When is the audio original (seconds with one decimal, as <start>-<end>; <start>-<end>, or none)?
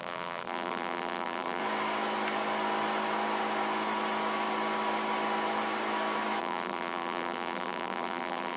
1.6-6.4